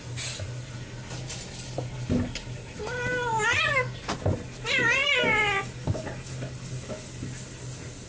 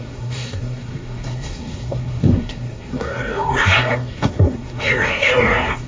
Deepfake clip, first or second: second